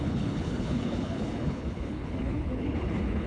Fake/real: fake